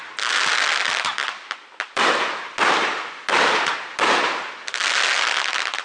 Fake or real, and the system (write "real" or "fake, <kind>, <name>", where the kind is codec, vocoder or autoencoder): real